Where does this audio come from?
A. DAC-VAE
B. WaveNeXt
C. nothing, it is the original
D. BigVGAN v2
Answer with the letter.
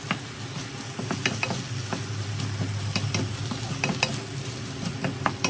C